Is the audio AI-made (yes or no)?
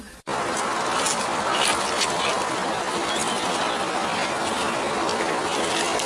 no